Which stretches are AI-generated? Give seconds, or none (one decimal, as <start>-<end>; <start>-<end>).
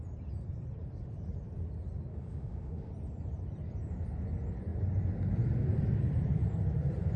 2.1-2.9